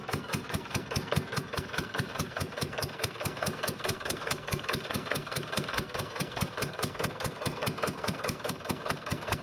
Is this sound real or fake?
fake